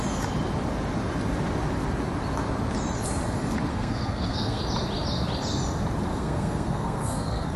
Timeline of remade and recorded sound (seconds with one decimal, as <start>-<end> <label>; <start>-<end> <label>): 0.0-3.7 recorded; 3.7-4.6 remade; 4.6-6.1 recorded; 6.1-7.6 remade